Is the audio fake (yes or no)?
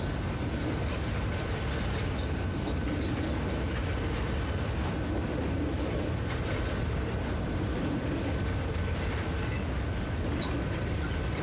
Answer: no